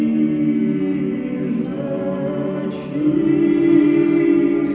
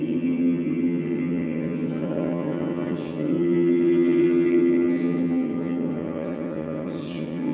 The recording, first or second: first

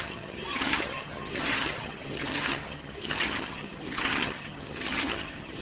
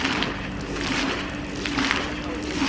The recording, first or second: second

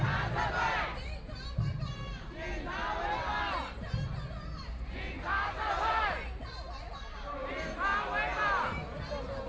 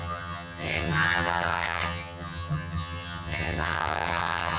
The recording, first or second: first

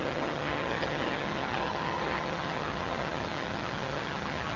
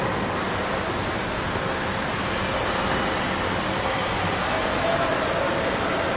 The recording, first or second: second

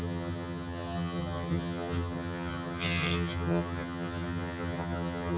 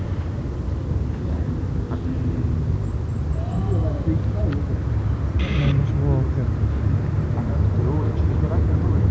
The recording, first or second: second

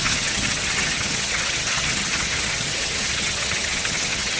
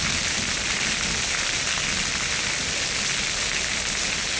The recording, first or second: second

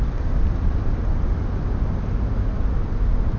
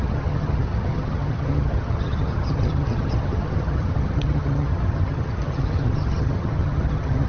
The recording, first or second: first